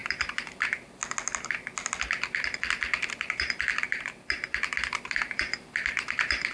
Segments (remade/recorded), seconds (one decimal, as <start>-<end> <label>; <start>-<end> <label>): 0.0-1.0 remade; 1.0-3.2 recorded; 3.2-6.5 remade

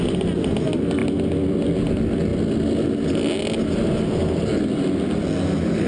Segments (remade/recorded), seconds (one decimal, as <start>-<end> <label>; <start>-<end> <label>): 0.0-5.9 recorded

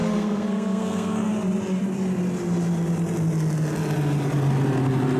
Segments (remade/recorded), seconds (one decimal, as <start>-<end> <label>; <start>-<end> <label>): 0.0-1.3 remade; 1.3-5.2 recorded

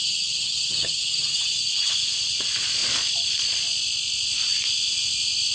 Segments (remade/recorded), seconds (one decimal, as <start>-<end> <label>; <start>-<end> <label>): 0.0-1.9 remade; 1.9-5.5 recorded

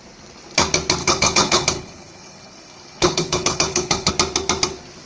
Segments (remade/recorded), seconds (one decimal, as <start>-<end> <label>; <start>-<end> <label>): 0.0-1.0 recorded; 1.0-4.1 remade; 4.1-5.1 recorded